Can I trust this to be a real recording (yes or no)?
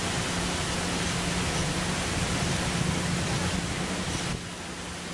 yes